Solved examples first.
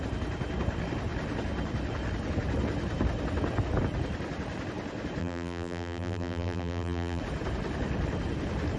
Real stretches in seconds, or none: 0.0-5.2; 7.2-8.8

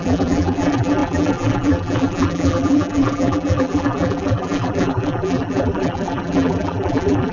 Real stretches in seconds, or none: none